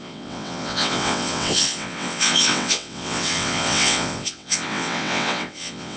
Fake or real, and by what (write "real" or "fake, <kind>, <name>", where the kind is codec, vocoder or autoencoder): fake, vocoder, WaveNeXt